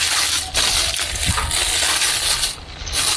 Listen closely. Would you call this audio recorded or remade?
recorded